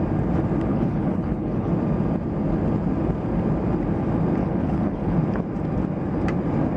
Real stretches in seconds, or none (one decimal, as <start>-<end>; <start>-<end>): 0.0-0.7; 1.7-4.4; 5.2-6.8